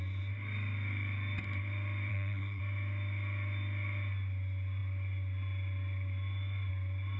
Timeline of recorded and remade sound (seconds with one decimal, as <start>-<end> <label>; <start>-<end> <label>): 0.0-2.1 recorded; 2.1-2.6 remade; 2.6-7.2 recorded